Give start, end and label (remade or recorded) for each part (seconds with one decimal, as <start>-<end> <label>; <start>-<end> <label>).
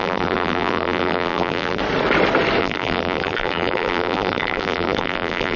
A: 0.0-1.8 remade; 1.8-2.6 recorded; 2.6-5.6 remade